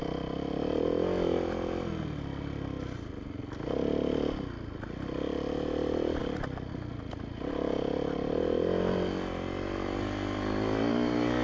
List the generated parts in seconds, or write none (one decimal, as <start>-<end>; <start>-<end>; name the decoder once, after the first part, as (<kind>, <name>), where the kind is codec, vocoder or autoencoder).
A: none